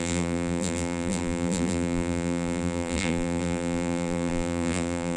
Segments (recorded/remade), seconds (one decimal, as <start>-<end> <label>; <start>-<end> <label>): 0.0-5.2 remade